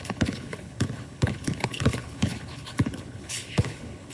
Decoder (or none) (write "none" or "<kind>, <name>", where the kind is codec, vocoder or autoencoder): codec, HILCodec